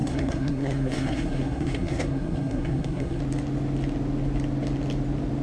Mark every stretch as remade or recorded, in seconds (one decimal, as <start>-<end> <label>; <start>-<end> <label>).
0.0-3.2 remade; 3.2-5.4 recorded